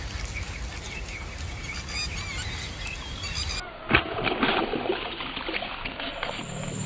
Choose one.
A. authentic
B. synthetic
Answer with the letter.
A